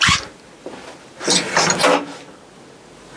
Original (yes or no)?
yes